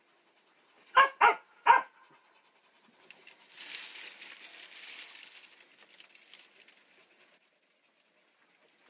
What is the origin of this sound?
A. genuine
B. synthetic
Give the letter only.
A